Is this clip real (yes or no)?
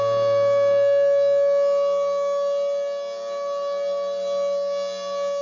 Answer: yes